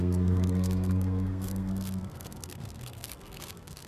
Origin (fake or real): fake